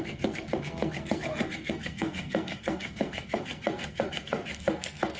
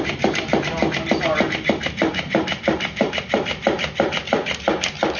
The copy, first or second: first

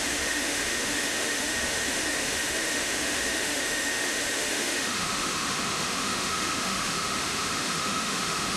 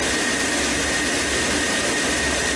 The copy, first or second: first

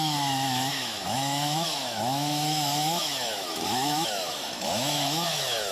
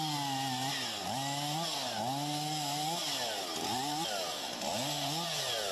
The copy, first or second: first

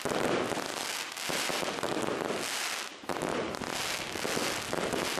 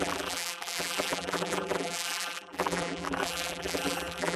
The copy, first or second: second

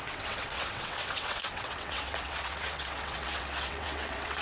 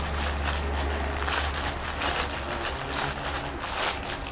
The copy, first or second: first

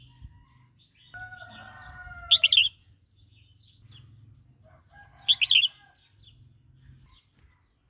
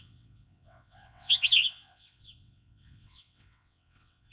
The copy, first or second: second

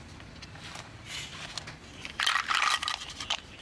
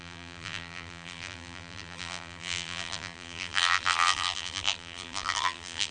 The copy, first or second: second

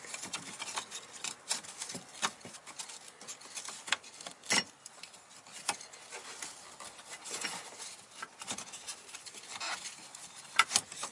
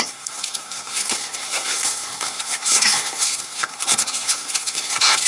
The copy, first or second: second